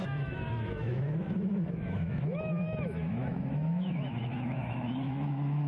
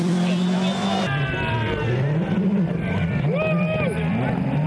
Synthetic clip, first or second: first